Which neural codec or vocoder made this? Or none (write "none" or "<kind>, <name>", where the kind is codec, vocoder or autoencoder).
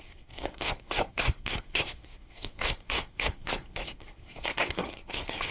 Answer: codec, SNAC